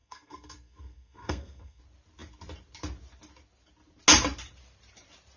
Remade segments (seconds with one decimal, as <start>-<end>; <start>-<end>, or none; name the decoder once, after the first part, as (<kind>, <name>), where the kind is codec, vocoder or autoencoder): 0.0-1.8 (codec, SNAC)